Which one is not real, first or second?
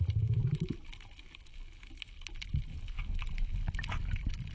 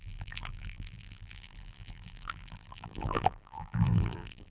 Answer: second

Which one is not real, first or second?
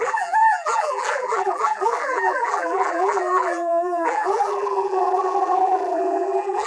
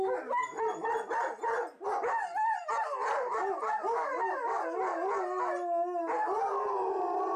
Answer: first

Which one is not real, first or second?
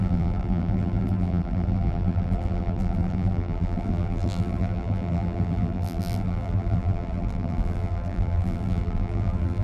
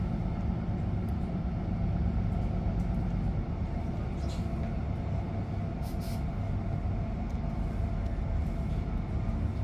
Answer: first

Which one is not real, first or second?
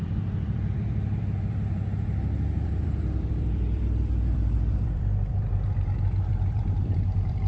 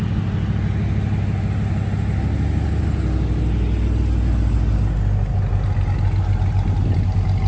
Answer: first